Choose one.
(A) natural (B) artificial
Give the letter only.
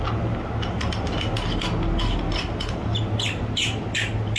A